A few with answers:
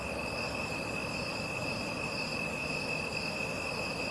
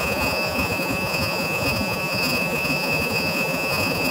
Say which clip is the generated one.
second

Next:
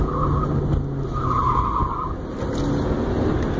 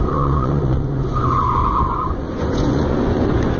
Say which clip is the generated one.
second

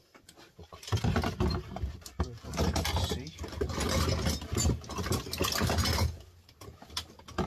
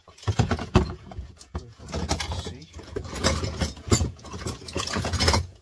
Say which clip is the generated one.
second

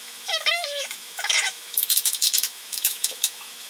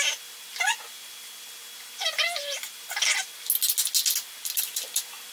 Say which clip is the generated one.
first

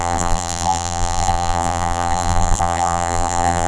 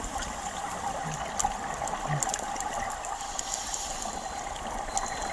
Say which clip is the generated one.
first